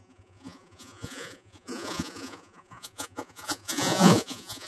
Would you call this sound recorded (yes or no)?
no